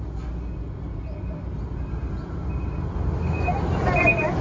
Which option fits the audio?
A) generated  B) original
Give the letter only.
B